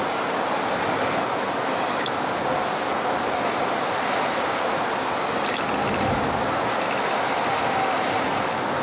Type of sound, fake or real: real